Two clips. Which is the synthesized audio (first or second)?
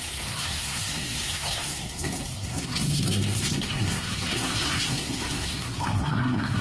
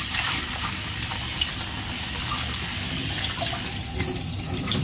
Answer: first